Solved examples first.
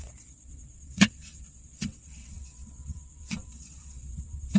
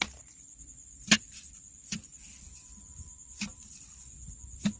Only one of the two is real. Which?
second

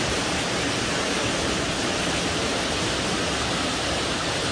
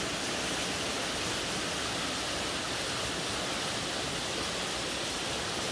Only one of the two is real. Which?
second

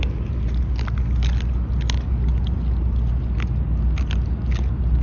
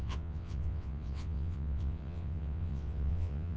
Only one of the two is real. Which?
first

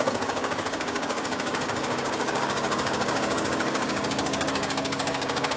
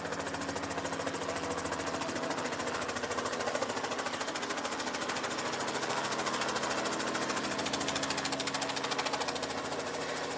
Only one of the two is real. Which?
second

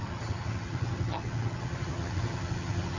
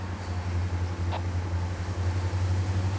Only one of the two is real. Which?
second